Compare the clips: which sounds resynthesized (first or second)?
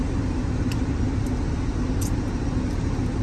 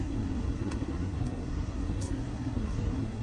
second